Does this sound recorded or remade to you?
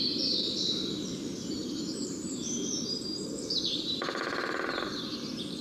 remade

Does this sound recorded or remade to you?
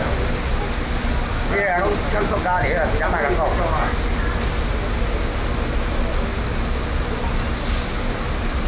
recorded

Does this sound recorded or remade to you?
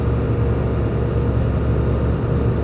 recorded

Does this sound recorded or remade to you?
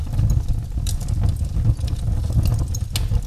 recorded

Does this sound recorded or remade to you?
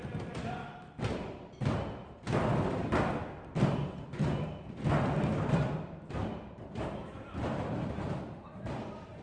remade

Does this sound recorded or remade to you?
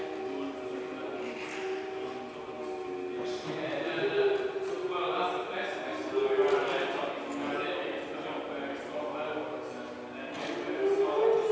recorded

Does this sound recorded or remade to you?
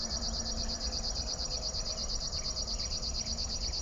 remade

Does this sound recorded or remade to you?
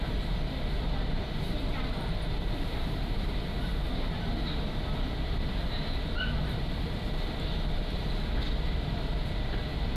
remade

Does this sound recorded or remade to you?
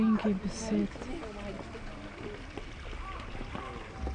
recorded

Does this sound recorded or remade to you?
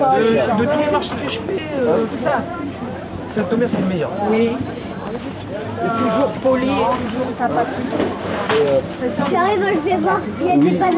remade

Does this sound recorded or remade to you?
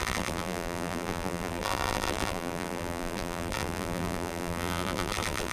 remade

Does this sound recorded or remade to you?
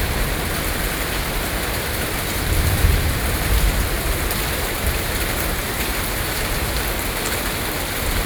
remade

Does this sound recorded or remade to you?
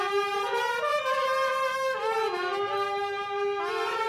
recorded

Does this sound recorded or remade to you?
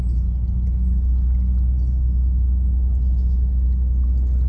recorded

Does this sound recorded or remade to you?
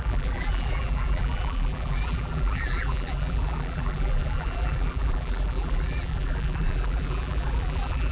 remade